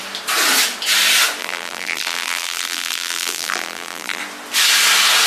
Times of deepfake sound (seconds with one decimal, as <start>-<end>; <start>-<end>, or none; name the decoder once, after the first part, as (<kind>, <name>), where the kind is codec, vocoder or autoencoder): 1.4-4.2 (vocoder, BigVGAN v2)